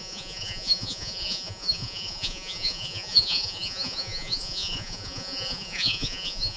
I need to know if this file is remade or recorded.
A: remade